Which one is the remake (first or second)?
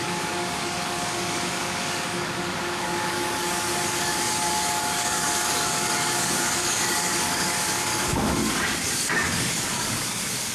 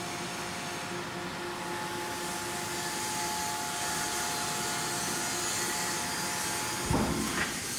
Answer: first